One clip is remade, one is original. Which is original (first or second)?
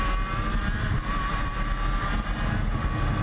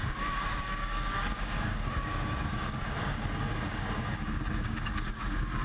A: first